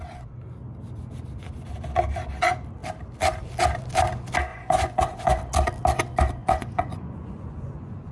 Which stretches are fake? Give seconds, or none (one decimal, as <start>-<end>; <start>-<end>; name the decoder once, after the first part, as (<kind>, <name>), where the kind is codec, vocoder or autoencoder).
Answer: 4.5-5.4 (vocoder, Vocos); 6.4-8.1